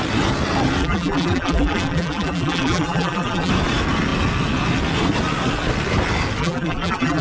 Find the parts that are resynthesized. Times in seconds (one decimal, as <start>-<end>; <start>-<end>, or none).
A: 0.8-3.5; 6.4-7.2